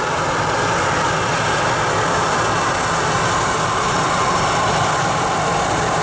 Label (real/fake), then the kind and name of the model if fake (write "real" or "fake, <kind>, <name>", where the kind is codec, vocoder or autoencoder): real